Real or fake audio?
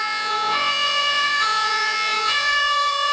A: fake